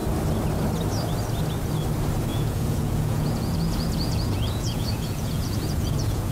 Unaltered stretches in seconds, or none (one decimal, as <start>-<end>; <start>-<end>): 0.0-2.3